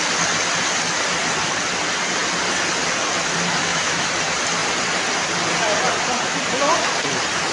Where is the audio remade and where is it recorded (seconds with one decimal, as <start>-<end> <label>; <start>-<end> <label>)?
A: 0.0-3.6 recorded; 3.6-4.1 remade; 4.1-7.5 recorded